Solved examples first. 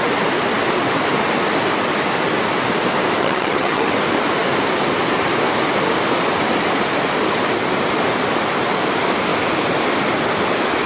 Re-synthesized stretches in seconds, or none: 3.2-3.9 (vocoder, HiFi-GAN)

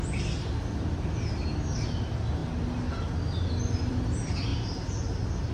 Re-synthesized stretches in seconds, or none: none